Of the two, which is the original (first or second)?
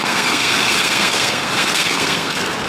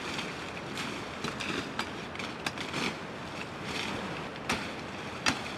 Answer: second